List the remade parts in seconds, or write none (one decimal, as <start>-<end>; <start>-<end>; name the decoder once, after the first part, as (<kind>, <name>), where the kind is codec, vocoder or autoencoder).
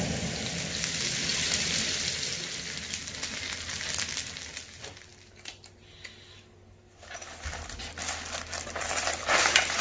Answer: none